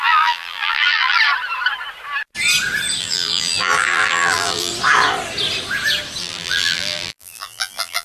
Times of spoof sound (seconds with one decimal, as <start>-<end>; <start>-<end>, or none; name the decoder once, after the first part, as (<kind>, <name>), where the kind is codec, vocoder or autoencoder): 0.0-1.2 (vocoder, BigVGAN v2); 3.0-4.7; 6.2-8.0